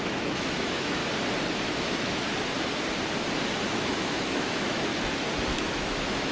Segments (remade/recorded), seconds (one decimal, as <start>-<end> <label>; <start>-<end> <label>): 0.0-1.0 remade; 1.0-1.6 recorded; 1.6-2.2 remade; 2.2-3.7 recorded; 3.7-4.9 remade; 4.9-5.5 recorded; 5.5-6.3 remade